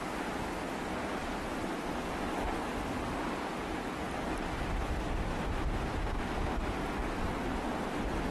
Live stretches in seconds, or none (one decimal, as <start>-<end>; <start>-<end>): 0.0-1.2; 1.8-8.3